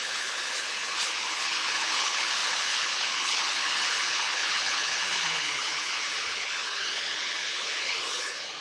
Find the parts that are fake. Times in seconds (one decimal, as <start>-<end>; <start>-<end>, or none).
0.0-8.6